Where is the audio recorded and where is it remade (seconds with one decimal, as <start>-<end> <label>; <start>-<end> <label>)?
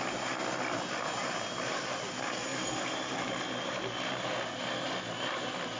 0.0-2.5 recorded; 2.5-3.3 remade; 3.3-5.8 recorded